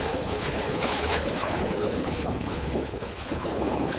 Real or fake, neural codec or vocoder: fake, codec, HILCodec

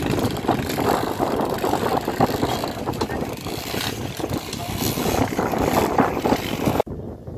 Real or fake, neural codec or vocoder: real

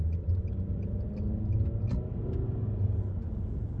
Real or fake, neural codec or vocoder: real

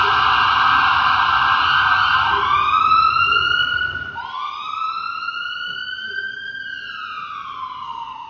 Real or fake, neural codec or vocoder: real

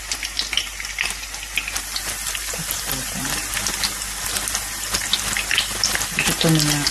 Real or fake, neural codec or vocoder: real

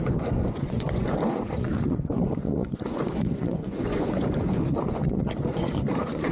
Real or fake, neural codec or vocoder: fake, vocoder, Vocos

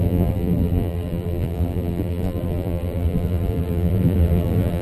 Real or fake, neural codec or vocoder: fake, vocoder, BigVGAN v2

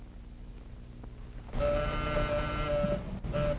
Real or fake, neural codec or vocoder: real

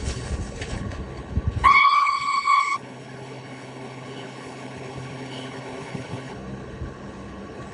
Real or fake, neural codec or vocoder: fake, codec, HILCodec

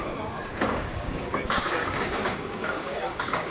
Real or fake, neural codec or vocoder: fake, codec, DAC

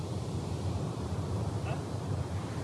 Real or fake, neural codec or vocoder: fake, vocoder, BigVGAN v2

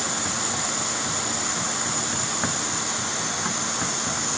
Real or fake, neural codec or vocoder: real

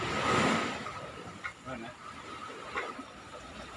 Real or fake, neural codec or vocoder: fake, vocoder, BigVGAN v2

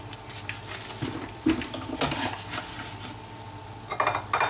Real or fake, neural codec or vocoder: real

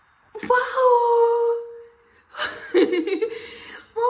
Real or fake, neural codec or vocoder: real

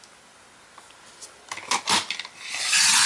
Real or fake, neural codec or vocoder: real